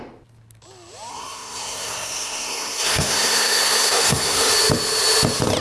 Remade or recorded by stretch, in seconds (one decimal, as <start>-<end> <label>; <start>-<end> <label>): 0.0-1.1 recorded; 1.1-4.5 remade; 4.5-5.6 recorded